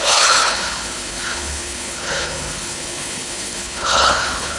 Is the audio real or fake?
fake